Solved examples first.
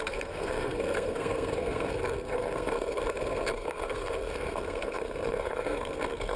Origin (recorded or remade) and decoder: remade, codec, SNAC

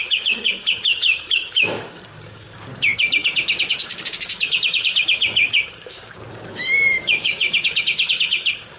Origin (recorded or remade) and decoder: remade, codec, DAC